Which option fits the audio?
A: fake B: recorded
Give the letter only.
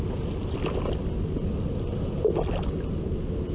B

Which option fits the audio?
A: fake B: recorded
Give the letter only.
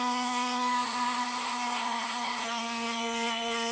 A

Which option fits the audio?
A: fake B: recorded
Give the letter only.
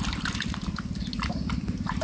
B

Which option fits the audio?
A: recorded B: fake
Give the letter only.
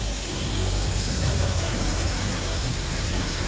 B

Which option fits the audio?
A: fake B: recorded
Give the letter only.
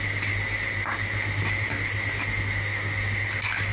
B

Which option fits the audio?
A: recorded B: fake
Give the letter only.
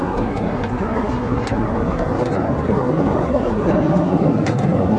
B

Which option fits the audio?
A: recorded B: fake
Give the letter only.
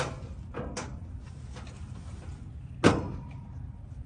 A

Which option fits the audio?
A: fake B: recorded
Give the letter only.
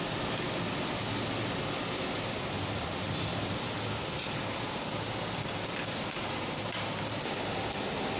B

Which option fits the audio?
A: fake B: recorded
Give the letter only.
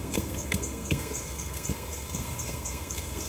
A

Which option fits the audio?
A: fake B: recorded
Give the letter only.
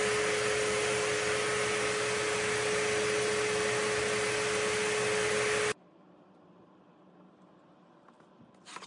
B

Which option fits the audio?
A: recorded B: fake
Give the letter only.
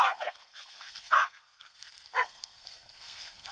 B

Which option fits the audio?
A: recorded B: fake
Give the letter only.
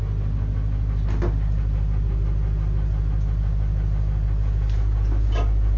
A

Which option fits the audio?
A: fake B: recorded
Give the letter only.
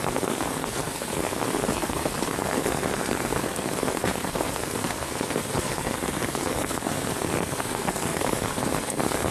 A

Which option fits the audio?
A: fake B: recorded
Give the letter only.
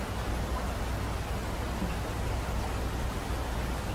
B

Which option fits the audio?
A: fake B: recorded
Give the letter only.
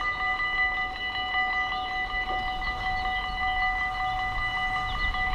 B